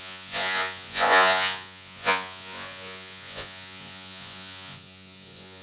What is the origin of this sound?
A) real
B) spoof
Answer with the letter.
B